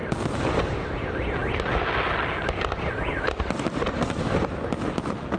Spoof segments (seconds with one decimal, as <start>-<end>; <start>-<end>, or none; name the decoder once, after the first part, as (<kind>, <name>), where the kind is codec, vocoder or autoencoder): none